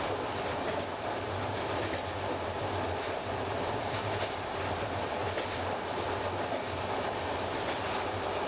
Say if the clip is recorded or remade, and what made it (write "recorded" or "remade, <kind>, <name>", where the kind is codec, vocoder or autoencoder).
recorded